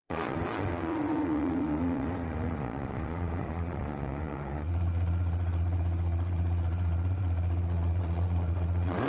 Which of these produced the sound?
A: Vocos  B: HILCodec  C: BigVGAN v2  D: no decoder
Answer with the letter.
A